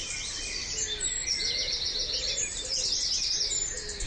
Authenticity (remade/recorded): recorded